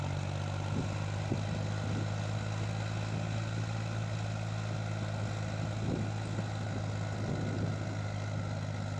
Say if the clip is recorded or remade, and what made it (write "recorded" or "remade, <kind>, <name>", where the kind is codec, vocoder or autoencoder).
recorded